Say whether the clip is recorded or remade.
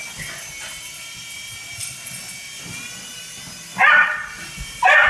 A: recorded